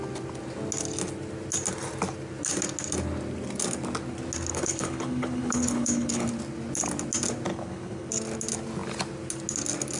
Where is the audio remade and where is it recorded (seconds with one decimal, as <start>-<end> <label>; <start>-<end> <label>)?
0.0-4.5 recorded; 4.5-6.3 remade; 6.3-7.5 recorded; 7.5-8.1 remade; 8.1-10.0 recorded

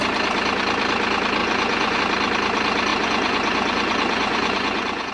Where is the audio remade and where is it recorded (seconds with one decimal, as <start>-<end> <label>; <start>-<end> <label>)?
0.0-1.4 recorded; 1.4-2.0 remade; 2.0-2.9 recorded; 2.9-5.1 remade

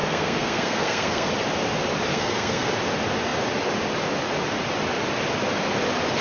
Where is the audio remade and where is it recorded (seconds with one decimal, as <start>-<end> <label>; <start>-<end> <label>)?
0.0-1.3 remade; 1.3-2.1 recorded; 2.1-2.7 remade; 2.7-6.2 recorded